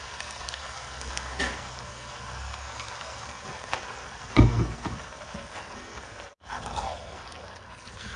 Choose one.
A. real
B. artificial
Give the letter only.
B